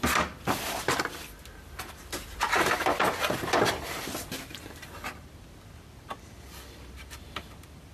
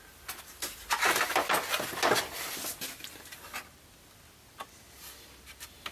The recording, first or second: second